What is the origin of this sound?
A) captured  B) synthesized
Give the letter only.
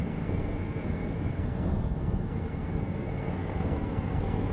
B